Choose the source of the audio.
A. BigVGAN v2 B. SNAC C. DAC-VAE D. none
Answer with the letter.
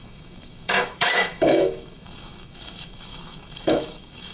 C